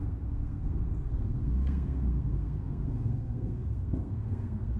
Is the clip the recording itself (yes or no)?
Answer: no